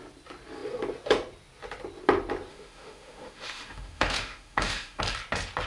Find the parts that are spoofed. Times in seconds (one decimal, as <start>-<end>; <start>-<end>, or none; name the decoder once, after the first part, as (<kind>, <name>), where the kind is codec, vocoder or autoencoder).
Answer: 2.5-5.0 (autoencoder, DAC-VAE)